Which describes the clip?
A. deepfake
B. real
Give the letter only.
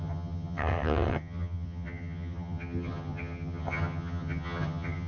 A